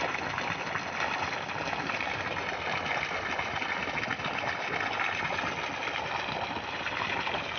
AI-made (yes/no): no